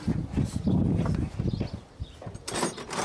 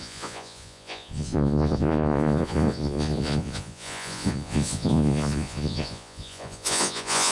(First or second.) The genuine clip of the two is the first